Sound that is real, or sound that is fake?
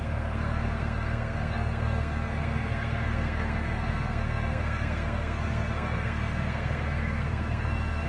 fake